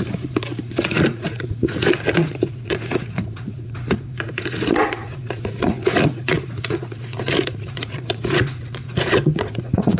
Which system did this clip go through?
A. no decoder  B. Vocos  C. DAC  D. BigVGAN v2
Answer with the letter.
B